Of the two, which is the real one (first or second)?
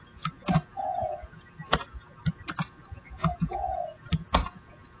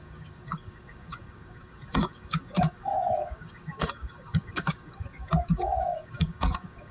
first